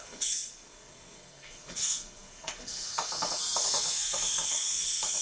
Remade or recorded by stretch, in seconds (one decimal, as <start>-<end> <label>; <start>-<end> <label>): 0.0-5.2 remade